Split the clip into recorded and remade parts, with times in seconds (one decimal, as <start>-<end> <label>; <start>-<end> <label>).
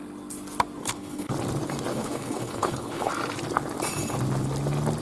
0.0-0.8 recorded; 0.8-1.3 remade; 1.3-1.9 recorded; 1.9-3.1 remade; 3.1-5.0 recorded